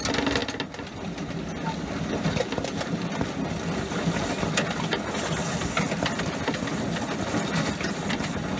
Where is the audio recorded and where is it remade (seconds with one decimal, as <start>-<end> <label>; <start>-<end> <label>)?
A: 0.0-8.6 recorded